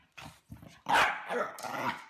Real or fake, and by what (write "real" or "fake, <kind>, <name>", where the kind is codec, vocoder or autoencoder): real